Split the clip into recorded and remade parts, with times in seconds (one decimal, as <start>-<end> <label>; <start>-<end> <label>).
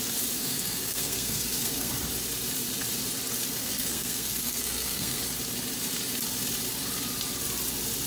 0.0-0.4 recorded; 0.4-1.9 remade; 1.9-3.6 recorded; 3.6-5.2 remade; 5.2-8.1 recorded